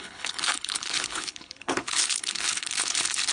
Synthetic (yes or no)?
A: yes